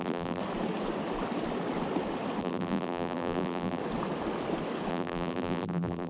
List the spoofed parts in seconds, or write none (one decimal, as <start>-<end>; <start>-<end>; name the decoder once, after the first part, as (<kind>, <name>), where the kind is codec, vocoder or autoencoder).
0.0-0.4 (vocoder, BigVGAN v2); 2.4-3.8; 4.9-6.1